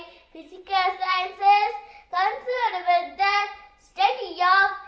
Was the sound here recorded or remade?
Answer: remade